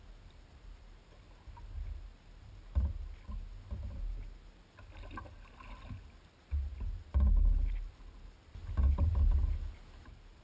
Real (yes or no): yes